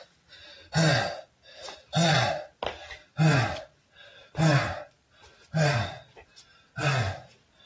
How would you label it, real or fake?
real